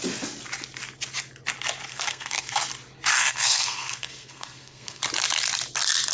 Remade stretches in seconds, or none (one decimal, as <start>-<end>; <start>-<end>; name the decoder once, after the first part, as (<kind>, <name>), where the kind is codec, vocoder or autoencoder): 1.9-2.6 (codec, SNAC); 3.1-5.0